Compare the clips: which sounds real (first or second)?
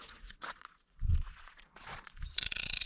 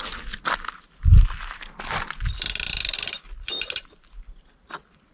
second